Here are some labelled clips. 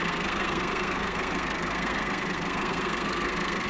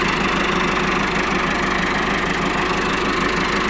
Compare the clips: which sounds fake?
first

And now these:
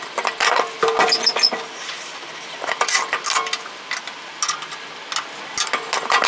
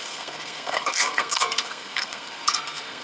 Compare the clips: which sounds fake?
second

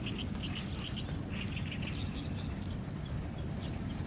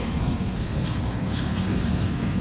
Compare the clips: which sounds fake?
second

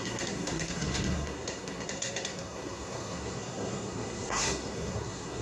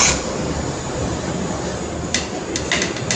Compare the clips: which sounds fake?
first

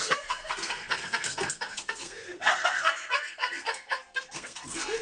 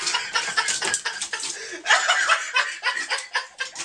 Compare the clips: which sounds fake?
first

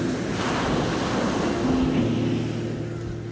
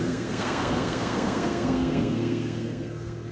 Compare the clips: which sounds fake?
second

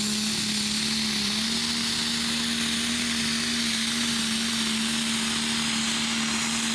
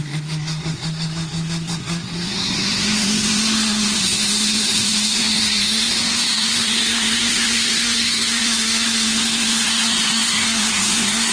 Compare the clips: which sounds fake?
second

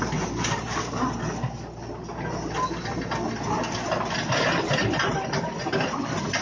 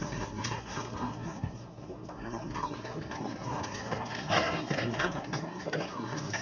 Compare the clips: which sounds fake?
second